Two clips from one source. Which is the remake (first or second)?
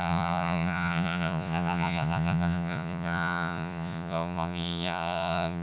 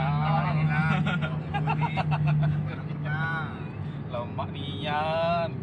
first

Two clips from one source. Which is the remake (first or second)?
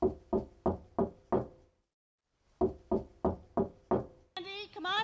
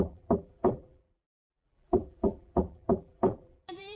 second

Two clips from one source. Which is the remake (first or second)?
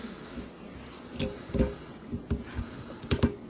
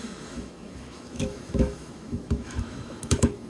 second